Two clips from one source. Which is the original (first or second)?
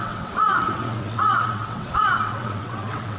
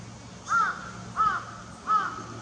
second